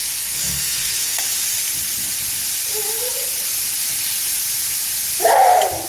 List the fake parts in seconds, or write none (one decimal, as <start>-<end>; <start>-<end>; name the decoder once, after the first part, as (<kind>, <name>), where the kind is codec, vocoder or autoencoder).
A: 0.0-1.2 (codec, SNAC)